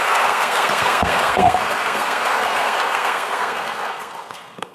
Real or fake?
fake